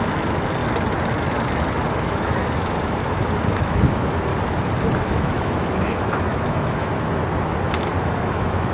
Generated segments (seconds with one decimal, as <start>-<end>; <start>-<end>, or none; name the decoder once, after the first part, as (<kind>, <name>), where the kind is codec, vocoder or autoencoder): 0.0-0.6 (autoencoder, DAC-VAE); 1.1-4.3; 5.1-7.2; 8.0-8.7